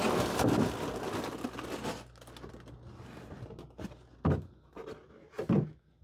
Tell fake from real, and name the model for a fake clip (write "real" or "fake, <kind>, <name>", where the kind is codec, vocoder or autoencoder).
real